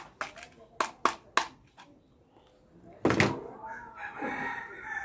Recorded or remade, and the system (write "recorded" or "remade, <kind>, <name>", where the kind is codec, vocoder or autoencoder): recorded